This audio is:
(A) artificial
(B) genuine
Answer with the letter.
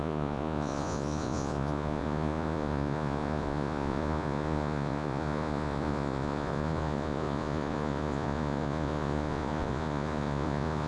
A